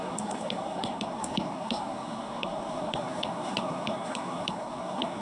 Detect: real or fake fake